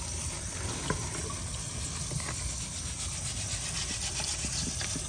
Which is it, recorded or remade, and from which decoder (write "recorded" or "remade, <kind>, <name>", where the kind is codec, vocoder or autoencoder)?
recorded